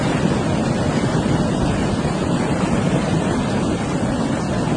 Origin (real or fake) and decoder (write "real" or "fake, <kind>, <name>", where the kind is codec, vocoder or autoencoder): real